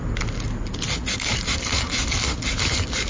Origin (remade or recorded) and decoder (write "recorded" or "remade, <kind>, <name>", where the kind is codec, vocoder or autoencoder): recorded